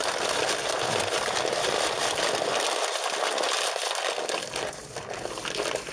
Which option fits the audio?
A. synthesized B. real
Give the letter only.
B